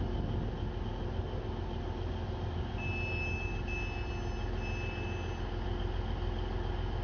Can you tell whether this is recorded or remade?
recorded